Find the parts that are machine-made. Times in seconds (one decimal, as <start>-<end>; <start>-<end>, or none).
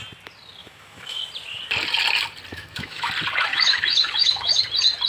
0.6-1.2; 2.5-3.1; 3.5-4.6